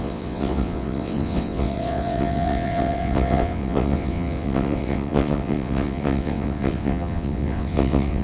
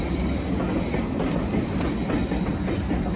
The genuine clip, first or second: second